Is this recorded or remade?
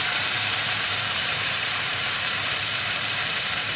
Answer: remade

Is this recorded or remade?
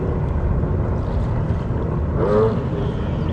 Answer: recorded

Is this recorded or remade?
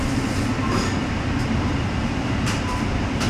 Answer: remade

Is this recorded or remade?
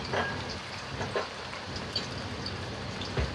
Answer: remade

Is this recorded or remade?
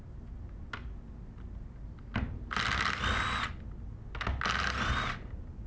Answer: recorded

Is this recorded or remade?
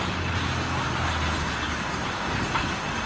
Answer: recorded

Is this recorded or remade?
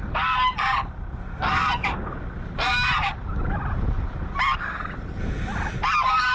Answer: remade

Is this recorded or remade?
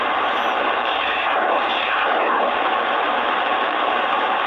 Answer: remade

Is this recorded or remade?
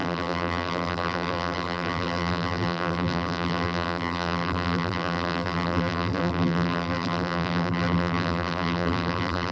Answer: remade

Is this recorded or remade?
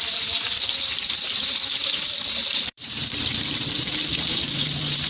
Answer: remade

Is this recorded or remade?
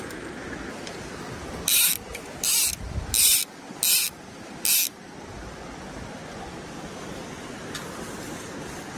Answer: recorded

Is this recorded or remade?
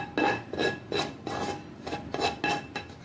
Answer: recorded